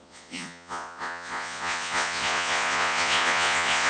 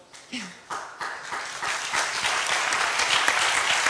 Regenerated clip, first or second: first